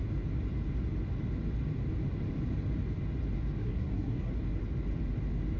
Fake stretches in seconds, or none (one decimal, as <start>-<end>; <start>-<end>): 3.6-4.3